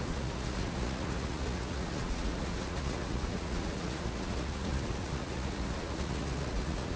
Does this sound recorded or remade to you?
remade